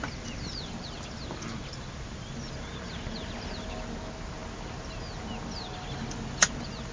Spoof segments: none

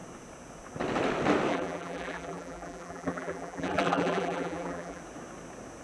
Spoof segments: 1.5-5.0

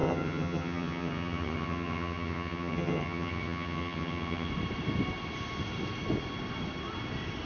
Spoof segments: 0.0-4.5